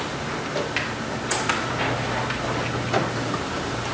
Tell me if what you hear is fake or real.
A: real